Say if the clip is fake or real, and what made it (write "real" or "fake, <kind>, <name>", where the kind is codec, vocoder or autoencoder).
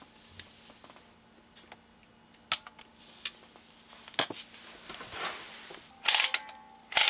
real